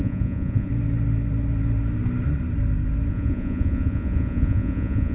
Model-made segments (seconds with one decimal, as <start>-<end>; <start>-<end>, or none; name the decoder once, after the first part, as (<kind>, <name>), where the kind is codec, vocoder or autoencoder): 0.0-0.7 (vocoder, Vocos); 3.1-5.1